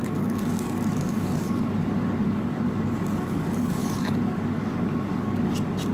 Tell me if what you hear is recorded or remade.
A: remade